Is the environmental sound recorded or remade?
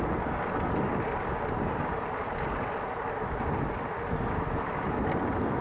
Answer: recorded